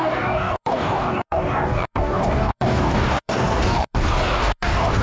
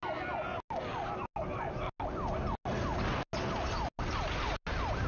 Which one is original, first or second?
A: second